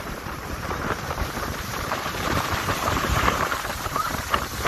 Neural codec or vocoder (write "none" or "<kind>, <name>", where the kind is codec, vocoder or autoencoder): vocoder, BigVGAN v2